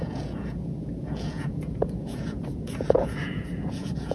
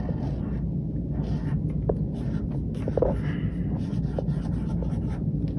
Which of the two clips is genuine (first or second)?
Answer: second